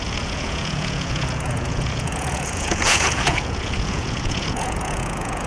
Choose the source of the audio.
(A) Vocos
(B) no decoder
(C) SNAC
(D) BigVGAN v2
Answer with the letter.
A